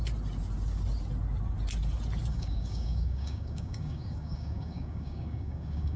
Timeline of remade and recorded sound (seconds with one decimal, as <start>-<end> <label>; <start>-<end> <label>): 0.0-2.3 recorded; 2.3-6.0 remade